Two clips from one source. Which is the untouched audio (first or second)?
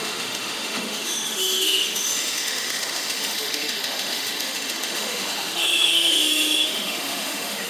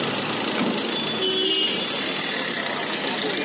second